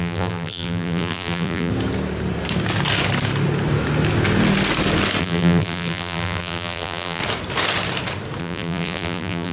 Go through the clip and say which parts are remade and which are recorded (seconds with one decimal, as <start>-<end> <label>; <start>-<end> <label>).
0.0-1.7 remade; 1.7-5.2 recorded; 5.2-7.2 remade; 7.2-8.4 recorded; 8.4-9.5 remade